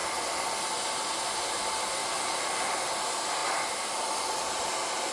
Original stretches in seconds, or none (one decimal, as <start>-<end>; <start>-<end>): 0.0-1.1; 2.0-2.7

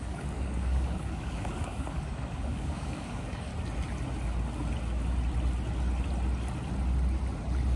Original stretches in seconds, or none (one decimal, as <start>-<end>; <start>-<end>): 3.5-7.8

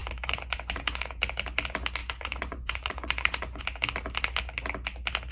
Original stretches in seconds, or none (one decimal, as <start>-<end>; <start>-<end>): 1.2-2.0; 3.6-5.3

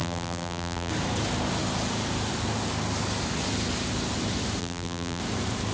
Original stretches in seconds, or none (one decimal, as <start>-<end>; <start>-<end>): 0.9-4.6; 5.2-5.7